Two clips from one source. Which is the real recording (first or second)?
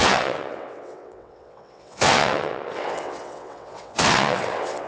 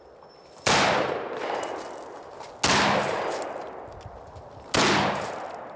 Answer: second